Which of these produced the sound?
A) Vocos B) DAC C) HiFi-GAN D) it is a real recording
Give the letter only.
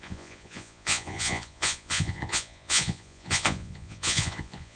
A